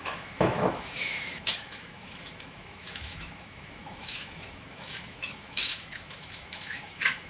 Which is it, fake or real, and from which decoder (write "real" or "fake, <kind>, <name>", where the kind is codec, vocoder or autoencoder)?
fake, autoencoder, DAC-VAE